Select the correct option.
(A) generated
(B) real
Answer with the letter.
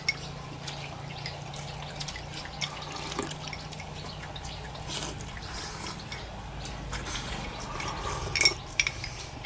B